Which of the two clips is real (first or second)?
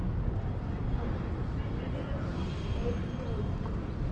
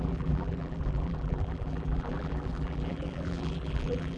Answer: first